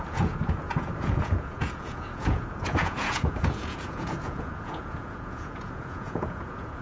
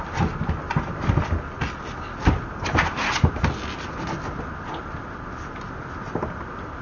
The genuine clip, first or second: second